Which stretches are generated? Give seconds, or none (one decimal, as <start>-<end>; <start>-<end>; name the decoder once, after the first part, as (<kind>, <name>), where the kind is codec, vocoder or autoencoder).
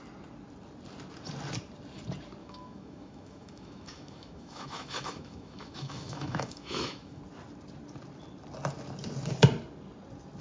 2.4-7.2 (autoencoder, DAC-VAE)